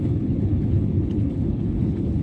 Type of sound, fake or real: fake